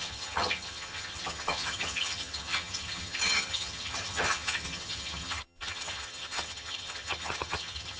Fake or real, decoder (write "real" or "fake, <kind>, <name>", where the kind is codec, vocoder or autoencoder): fake, vocoder, HiFi-GAN